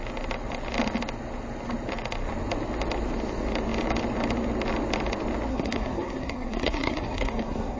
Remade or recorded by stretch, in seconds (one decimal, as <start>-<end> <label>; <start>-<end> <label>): 0.0-5.5 recorded; 5.5-7.8 remade